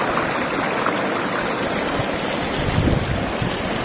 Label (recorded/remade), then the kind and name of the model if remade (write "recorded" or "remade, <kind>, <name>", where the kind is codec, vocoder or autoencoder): recorded